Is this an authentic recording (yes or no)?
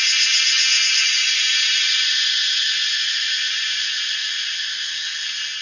yes